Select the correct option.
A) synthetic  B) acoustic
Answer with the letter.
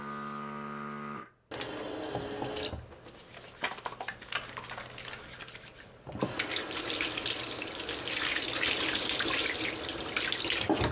B